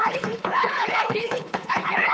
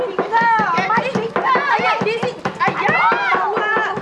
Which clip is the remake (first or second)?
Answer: first